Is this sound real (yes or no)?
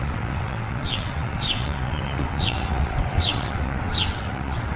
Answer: no